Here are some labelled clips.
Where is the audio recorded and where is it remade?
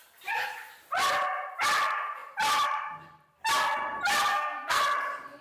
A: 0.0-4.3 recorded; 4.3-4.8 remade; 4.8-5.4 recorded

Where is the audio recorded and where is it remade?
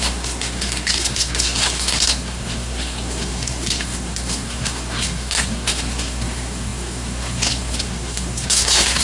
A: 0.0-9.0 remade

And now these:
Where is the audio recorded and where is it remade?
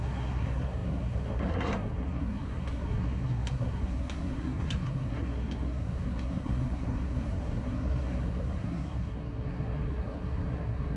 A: 0.0-11.0 remade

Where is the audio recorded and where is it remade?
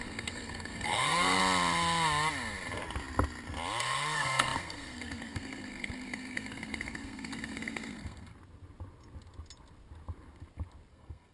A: 0.0-1.4 remade; 1.4-3.8 recorded; 3.8-8.3 remade; 8.3-10.9 recorded; 10.9-11.3 remade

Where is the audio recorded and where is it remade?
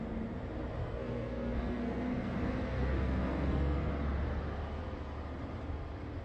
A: 0.0-0.8 recorded; 0.8-3.9 remade; 3.9-6.2 recorded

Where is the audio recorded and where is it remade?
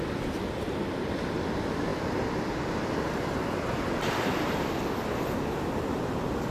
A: 0.0-6.5 recorded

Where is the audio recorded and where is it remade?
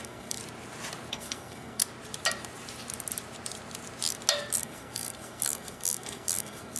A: 0.0-0.4 remade; 0.4-1.1 recorded; 1.1-1.8 remade; 1.8-4.6 recorded; 4.6-6.8 remade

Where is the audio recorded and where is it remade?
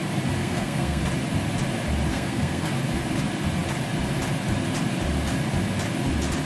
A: 0.0-0.4 recorded; 0.4-1.0 remade; 1.0-2.1 recorded; 2.1-2.7 remade; 2.7-6.5 recorded